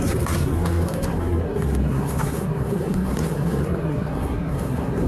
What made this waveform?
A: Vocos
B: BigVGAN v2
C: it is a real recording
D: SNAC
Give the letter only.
D